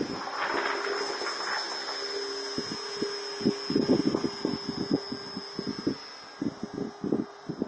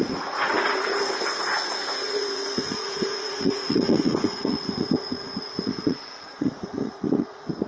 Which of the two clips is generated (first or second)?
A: second